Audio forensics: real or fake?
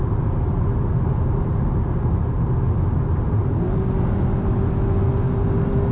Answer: real